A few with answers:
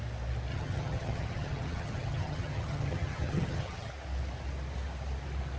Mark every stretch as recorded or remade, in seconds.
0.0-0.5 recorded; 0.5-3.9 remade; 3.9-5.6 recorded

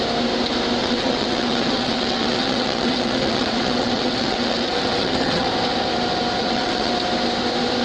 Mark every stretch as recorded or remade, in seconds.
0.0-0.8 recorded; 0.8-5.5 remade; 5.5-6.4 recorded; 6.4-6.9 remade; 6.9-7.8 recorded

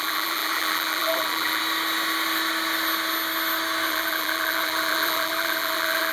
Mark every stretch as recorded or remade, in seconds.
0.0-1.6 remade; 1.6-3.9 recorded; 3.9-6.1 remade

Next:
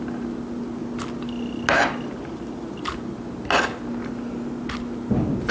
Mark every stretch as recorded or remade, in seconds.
0.0-5.5 recorded

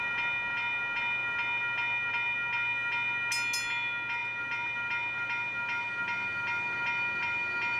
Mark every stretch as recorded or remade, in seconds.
0.0-7.8 recorded

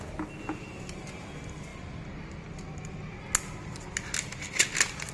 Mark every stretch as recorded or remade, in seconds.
0.0-5.1 recorded

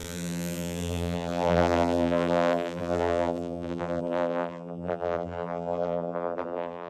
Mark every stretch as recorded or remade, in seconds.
0.0-6.9 remade

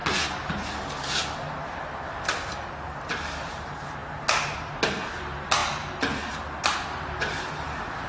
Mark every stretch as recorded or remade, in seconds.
0.0-8.1 recorded